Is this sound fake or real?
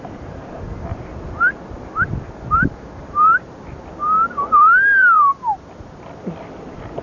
fake